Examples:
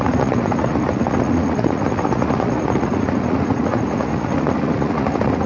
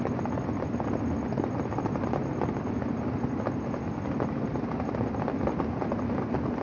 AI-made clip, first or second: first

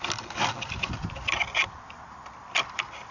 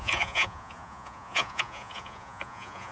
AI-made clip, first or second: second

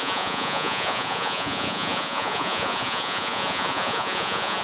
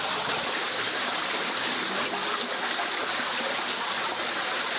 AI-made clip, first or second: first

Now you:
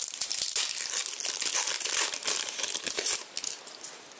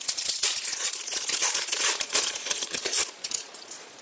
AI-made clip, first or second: second